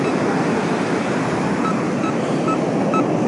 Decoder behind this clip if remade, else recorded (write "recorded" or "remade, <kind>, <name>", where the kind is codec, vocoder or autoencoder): recorded